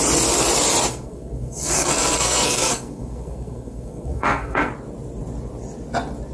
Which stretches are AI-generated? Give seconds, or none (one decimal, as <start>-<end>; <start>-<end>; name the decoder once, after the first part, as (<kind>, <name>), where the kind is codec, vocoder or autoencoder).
0.9-4.7 (codec, SNAC)